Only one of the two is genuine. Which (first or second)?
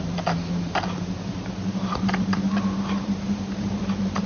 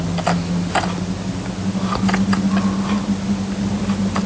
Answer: second